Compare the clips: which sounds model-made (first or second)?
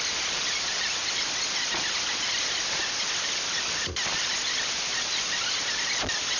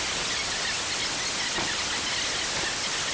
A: first